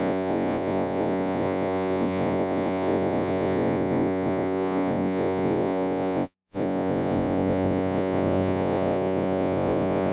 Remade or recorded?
remade